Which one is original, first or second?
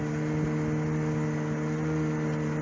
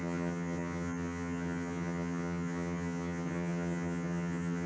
first